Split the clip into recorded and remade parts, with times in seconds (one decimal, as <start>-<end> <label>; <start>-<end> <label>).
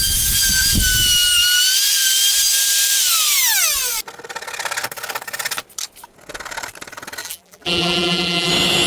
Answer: 0.0-7.2 recorded; 7.2-8.5 remade; 8.5-8.9 recorded